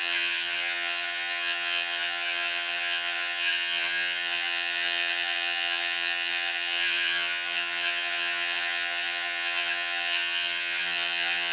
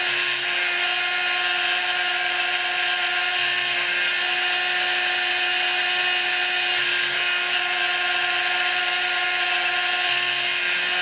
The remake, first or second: first